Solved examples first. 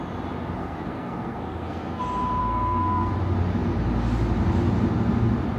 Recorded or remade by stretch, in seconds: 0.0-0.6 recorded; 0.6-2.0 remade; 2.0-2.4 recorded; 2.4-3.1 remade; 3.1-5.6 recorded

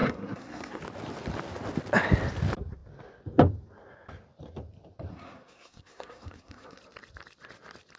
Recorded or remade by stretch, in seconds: 0.0-0.8 remade; 0.8-5.1 recorded; 5.1-6.8 remade; 6.8-8.0 recorded

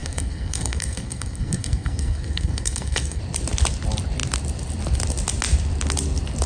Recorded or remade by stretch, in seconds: 0.0-3.2 remade; 3.2-6.5 recorded

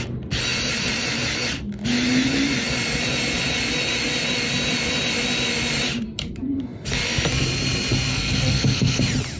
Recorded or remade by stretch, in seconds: 0.0-8.1 recorded; 8.1-9.0 remade; 9.0-9.4 recorded

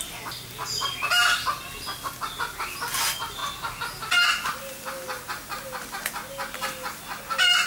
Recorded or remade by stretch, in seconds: 0.0-7.7 recorded

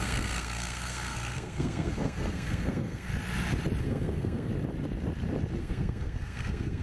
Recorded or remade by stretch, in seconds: 0.0-3.1 remade; 3.1-3.8 recorded; 3.8-4.5 remade; 4.5-5.6 recorded; 5.6-6.8 remade